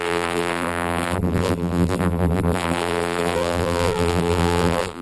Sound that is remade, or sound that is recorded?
remade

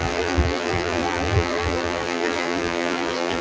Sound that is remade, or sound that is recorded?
remade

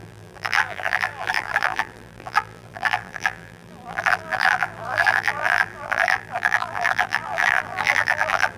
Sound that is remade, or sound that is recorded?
remade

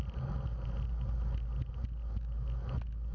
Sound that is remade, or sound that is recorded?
recorded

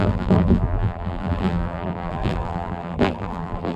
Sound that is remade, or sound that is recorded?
remade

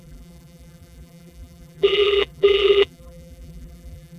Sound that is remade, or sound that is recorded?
remade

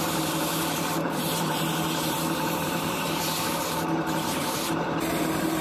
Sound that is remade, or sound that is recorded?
remade